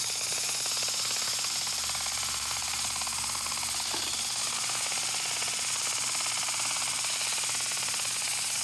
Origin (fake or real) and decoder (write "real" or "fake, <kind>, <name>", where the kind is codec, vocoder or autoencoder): real